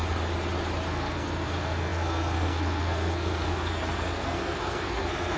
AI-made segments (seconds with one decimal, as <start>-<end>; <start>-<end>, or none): 0.9-5.4